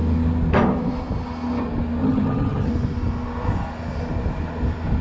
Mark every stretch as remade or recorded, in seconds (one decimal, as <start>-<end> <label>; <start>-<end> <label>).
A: 0.0-2.0 recorded; 2.0-2.7 remade; 2.7-5.0 recorded